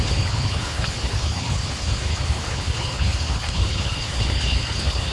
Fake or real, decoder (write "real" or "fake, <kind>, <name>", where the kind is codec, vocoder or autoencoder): fake, codec, HILCodec